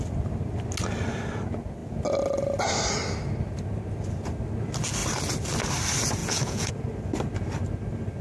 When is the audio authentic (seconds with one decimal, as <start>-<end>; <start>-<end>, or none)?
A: 0.0-6.2; 6.7-8.2